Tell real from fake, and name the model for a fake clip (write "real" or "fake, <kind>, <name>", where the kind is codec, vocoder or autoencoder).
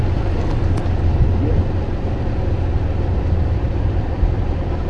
real